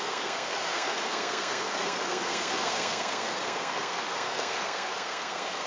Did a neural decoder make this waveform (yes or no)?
yes